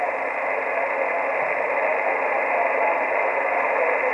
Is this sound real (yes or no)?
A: yes